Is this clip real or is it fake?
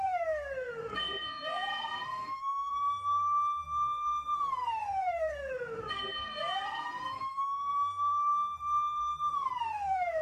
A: fake